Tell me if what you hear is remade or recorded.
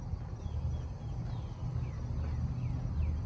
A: recorded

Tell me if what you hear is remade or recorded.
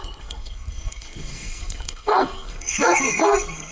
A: remade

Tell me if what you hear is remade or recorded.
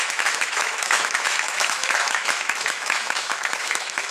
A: remade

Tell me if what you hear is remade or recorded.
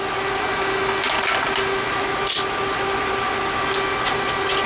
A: recorded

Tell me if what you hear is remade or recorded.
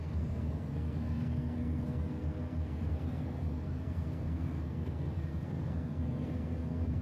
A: remade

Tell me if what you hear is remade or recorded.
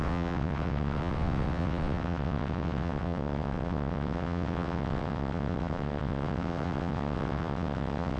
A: remade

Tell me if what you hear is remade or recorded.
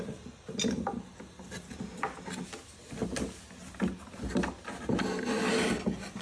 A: recorded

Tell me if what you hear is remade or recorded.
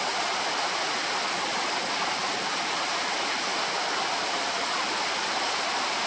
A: recorded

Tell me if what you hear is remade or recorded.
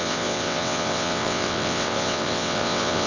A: remade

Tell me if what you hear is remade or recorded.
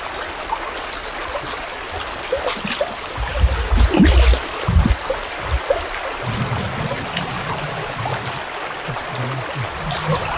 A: recorded